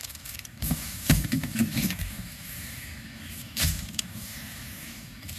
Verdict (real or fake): fake